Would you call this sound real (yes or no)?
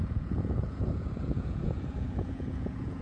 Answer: no